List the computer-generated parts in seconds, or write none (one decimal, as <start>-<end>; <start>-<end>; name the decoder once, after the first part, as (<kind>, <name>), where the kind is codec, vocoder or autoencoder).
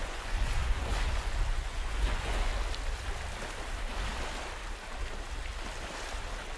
0.0-2.5 (vocoder, Vocos)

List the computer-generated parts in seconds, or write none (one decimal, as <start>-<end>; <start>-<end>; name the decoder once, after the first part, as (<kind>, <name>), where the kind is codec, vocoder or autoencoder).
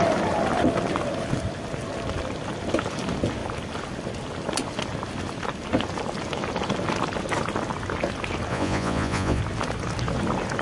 8.5-9.4 (vocoder, Vocos)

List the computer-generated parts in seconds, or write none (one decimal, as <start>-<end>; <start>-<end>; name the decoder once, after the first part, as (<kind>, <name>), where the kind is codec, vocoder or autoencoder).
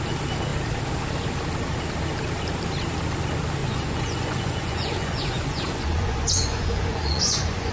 3.6-7.7 (vocoder, Vocos)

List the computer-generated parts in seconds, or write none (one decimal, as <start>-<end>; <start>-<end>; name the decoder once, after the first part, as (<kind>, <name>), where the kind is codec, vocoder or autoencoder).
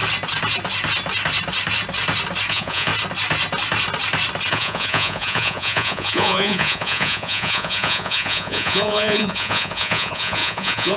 2.5-2.9 (vocoder, Vocos); 4.5-11.0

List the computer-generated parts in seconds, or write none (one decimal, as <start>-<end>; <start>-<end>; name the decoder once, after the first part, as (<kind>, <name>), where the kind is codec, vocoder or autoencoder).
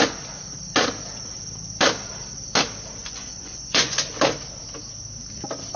3.0-4.1 (vocoder, Vocos)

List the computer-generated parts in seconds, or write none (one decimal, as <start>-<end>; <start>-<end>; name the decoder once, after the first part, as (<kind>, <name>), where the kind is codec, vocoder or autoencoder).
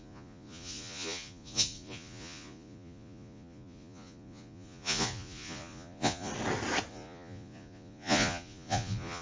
0.0-6.3 (vocoder, Vocos); 6.9-9.2